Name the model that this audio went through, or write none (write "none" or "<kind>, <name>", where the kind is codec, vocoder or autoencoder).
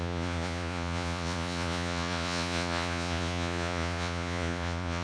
vocoder, Vocos